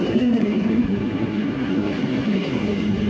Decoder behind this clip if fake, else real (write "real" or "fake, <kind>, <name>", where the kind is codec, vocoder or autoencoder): fake, codec, SNAC